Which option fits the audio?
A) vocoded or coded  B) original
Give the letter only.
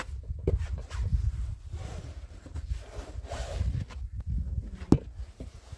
B